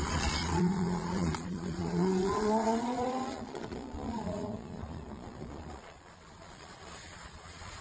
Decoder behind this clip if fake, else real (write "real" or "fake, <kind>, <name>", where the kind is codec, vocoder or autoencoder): fake, vocoder, Vocos